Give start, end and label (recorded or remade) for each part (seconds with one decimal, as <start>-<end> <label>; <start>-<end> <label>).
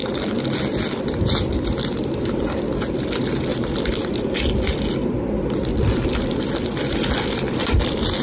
0.0-8.2 recorded